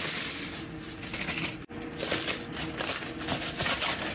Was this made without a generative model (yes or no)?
yes